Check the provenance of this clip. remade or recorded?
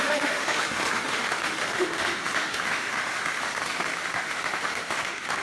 remade